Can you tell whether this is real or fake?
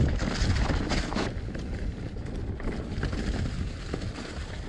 real